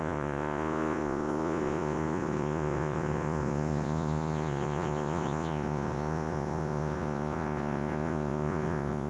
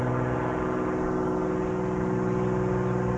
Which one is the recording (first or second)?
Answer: second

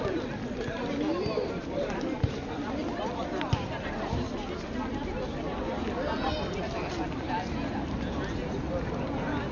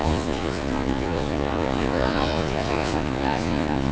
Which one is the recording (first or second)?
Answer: first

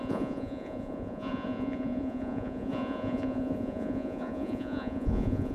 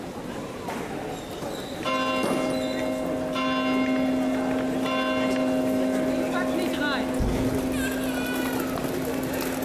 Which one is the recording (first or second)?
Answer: second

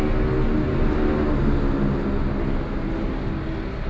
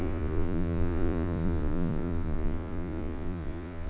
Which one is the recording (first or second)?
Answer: first